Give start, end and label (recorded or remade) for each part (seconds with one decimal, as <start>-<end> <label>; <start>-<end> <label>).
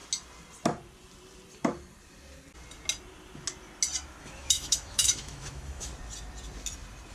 0.0-4.2 recorded; 4.2-5.9 remade; 5.9-7.1 recorded